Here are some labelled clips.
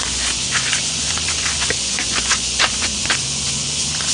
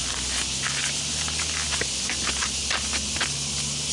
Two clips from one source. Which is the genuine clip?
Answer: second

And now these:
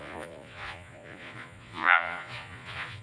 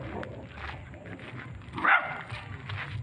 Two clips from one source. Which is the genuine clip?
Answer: second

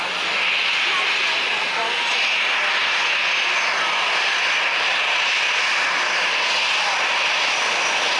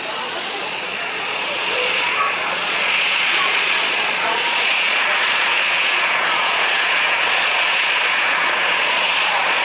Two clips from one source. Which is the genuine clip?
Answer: first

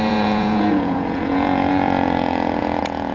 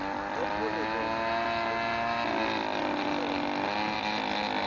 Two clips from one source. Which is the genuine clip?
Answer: second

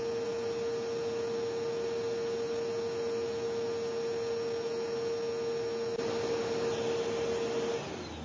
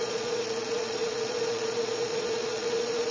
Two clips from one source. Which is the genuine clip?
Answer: first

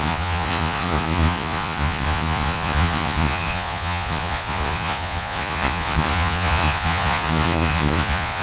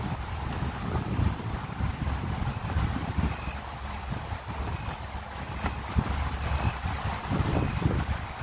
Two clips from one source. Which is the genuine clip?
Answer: second